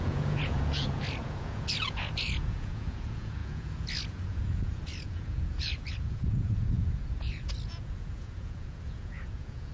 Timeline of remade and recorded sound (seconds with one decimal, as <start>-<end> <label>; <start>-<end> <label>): 0.0-9.7 remade